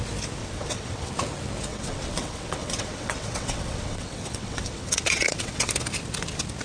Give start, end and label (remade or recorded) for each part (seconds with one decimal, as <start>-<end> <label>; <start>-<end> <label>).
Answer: 0.0-0.4 recorded; 0.4-1.1 remade; 1.1-1.7 recorded; 1.7-5.7 remade; 5.7-6.6 recorded